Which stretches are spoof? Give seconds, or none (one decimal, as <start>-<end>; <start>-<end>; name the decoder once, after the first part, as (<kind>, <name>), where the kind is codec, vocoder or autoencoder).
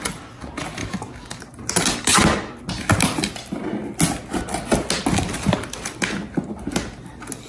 0.8-1.4 (codec, DAC)